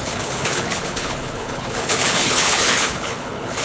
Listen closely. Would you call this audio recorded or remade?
remade